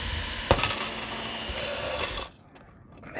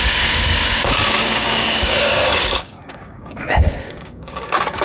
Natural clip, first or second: first